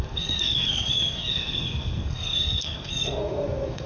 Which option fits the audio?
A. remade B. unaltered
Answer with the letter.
A